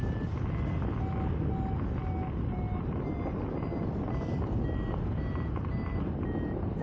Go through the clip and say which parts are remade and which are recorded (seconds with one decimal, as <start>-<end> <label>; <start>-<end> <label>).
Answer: 0.0-6.8 recorded